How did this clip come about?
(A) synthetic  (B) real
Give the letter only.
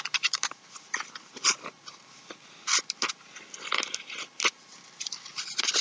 B